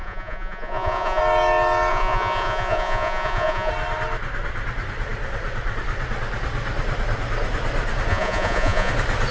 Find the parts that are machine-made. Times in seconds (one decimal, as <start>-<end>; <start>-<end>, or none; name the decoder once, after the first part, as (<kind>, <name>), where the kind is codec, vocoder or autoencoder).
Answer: 0.0-1.2 (vocoder, Vocos); 1.9-3.7; 8.1-8.9